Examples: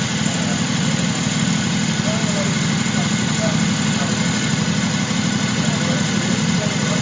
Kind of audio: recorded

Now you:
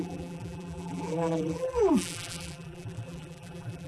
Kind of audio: remade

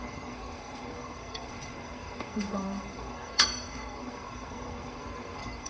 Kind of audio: remade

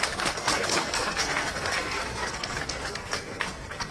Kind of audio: remade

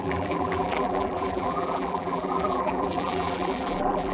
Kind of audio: remade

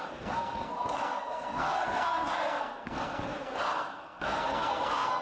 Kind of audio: remade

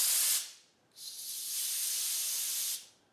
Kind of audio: recorded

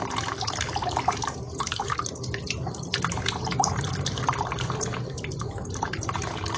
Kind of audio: remade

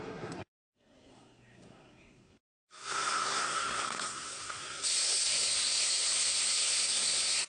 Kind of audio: remade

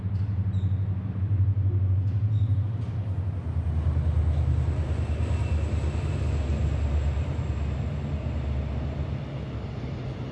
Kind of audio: recorded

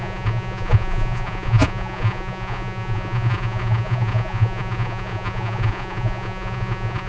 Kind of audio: remade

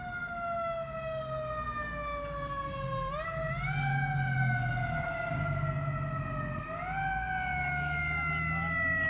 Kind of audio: recorded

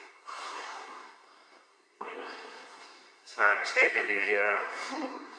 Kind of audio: remade